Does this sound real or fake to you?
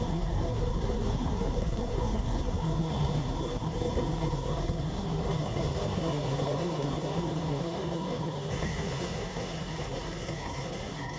fake